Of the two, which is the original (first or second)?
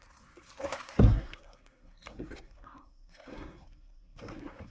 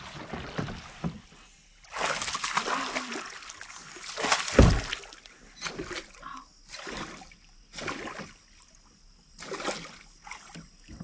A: second